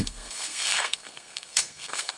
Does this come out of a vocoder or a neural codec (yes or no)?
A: yes